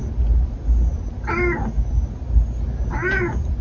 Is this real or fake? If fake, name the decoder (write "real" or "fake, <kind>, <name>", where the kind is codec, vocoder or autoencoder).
real